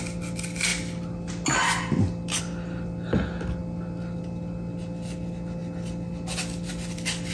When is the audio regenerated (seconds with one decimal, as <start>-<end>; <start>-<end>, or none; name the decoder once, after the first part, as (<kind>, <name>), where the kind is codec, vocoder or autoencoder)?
none